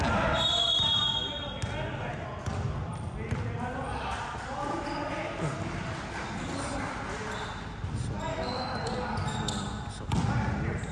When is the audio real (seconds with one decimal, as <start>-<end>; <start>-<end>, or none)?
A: 0.0-8.3; 8.9-10.9